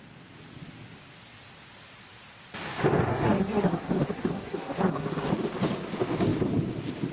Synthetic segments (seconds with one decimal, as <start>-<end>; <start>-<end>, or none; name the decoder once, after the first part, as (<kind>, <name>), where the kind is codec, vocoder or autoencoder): 3.1-5.3 (codec, SNAC)